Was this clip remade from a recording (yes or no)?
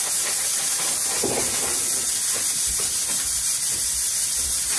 no